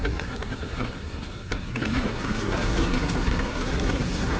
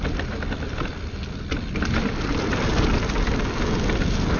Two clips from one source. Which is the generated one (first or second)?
first